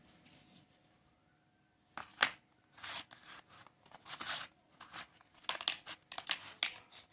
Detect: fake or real real